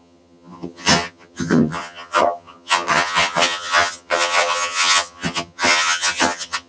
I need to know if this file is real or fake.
fake